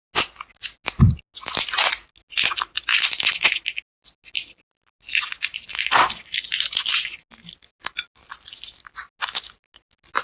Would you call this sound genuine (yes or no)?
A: yes